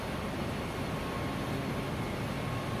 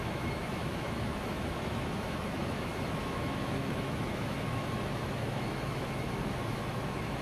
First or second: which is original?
first